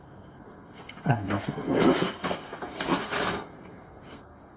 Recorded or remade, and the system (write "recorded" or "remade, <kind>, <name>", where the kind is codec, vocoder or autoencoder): remade, codec, SNAC